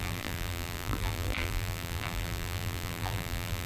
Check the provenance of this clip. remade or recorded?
remade